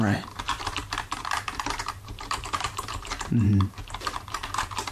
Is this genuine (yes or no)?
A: no